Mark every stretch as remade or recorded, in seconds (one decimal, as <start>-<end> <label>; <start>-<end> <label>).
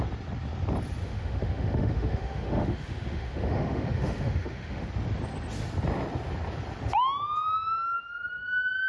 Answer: 0.0-1.0 recorded; 1.0-4.9 remade; 4.9-8.9 recorded